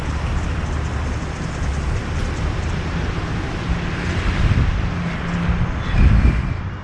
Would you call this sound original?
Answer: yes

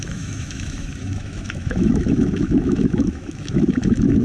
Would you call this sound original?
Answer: no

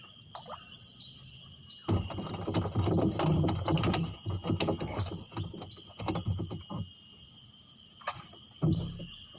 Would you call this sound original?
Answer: yes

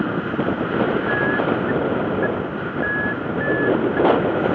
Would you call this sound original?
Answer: yes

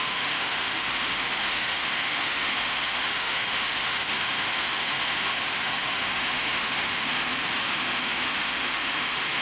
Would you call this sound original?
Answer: no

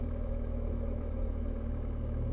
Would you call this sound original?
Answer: no